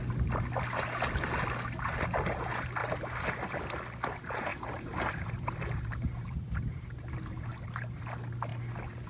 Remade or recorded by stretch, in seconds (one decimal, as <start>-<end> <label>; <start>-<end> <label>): 0.0-2.8 recorded; 2.8-3.6 remade; 3.6-4.5 recorded; 4.5-7.5 remade; 7.5-9.1 recorded